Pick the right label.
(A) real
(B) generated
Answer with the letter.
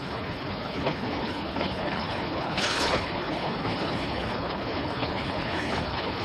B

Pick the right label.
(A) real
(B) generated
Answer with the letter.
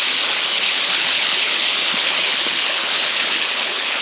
B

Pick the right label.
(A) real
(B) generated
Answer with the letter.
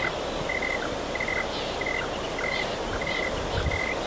A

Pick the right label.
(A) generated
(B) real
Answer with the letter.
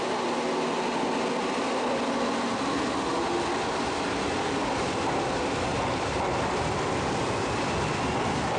B